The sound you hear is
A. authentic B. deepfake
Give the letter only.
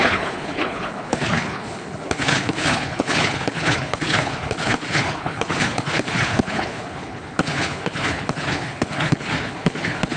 B